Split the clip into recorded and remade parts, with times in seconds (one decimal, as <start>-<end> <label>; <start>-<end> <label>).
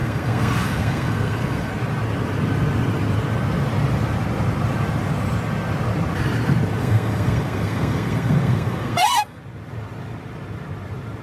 0.0-1.7 remade; 1.7-6.8 recorded; 6.8-9.4 remade; 9.4-11.2 recorded